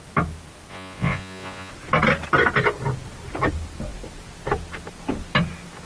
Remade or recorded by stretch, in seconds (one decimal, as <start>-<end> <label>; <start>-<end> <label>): 0.0-0.7 recorded; 0.7-1.7 remade; 1.7-5.9 recorded